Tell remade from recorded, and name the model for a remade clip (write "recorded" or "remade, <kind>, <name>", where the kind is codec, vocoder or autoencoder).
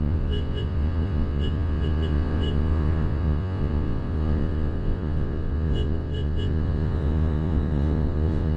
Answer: remade, vocoder, Vocos